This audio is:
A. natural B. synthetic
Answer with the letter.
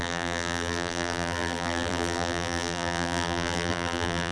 B